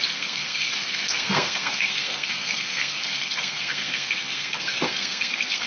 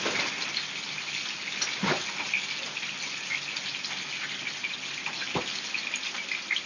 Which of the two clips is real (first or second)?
second